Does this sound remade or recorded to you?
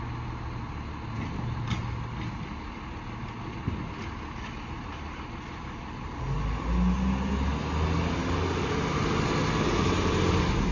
recorded